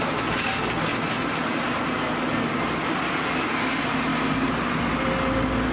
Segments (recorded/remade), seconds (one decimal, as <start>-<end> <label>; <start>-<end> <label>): 0.0-5.7 recorded